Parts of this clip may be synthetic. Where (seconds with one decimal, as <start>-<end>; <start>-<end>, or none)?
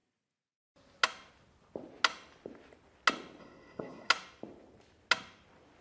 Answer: 3.4-4.1